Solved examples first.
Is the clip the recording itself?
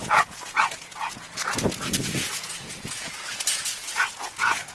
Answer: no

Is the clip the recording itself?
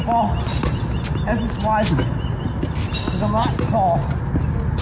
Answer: yes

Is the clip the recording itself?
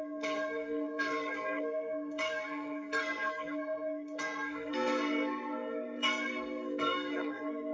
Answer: no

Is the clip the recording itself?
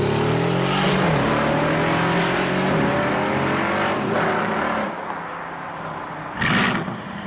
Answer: yes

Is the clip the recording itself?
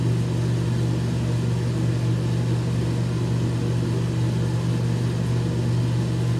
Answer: yes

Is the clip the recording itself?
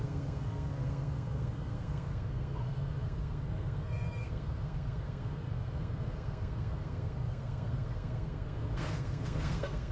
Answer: no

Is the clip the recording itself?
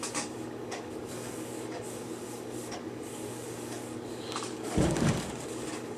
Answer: no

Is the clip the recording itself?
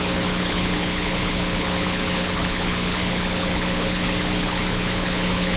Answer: no